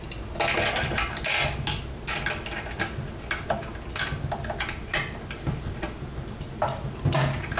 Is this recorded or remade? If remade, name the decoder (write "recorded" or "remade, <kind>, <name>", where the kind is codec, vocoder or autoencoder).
recorded